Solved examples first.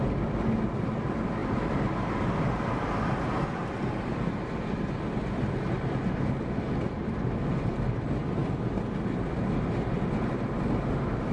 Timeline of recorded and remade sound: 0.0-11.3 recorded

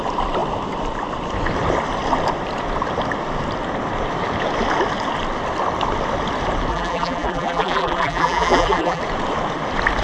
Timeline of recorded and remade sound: 0.0-6.7 recorded; 6.7-9.0 remade; 9.0-10.0 recorded

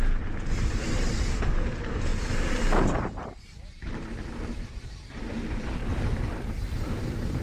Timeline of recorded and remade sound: 0.0-2.1 remade; 2.1-3.2 recorded; 3.2-7.4 remade